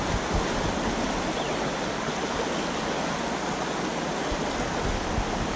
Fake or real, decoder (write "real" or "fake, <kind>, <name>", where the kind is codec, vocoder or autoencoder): real